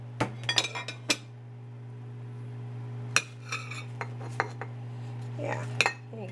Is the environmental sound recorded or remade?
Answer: recorded